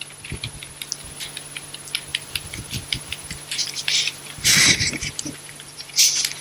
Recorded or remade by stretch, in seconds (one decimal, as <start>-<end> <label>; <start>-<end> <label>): 0.0-2.1 recorded; 2.1-5.9 remade; 5.9-6.4 recorded